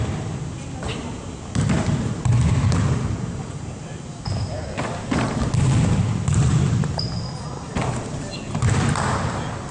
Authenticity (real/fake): fake